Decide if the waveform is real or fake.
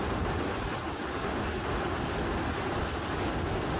real